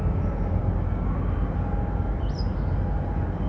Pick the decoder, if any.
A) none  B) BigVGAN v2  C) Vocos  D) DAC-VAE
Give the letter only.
A